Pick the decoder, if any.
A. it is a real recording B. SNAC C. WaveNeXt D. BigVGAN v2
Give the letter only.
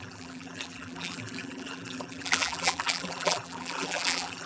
D